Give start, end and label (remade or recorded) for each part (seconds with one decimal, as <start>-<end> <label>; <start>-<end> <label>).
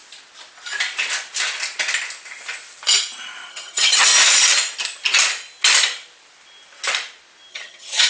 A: 0.0-3.5 recorded; 3.5-4.1 remade; 4.1-7.5 recorded; 7.5-8.1 remade